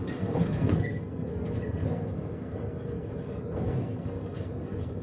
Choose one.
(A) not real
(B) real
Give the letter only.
A